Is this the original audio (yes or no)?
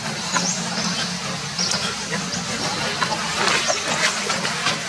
yes